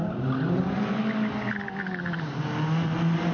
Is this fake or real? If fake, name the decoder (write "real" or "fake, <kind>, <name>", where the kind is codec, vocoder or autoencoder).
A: real